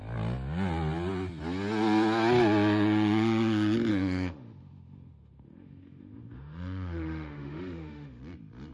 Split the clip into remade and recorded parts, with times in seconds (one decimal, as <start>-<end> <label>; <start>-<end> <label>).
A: 0.0-3.9 recorded; 3.9-8.2 remade; 8.2-8.7 recorded